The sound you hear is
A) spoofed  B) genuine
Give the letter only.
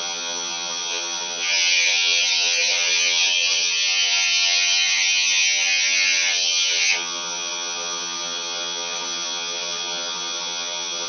A